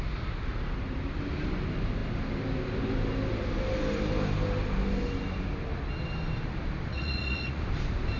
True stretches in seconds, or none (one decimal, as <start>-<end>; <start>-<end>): 0.0-6.9; 7.6-8.2